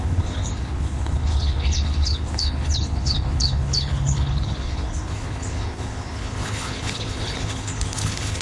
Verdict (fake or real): fake